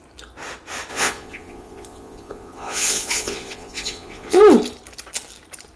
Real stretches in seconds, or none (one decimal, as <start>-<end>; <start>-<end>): 0.0-0.9; 4.4-5.8